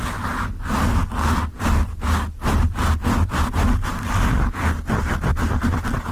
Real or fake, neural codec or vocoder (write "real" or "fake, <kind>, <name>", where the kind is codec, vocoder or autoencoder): real